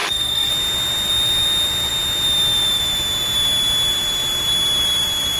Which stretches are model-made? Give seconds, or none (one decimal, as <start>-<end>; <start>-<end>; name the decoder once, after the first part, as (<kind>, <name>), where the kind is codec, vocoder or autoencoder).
0.0-0.5 (codec, SNAC)